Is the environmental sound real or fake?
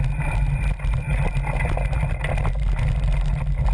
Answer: real